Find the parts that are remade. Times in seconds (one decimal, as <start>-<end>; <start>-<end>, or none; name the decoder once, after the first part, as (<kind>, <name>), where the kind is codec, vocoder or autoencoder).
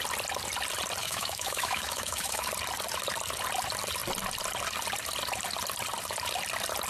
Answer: 1.0-2.5 (autoencoder, DAC-VAE)